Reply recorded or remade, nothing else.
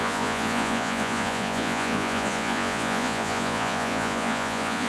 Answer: remade